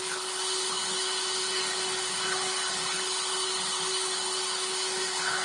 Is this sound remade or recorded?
remade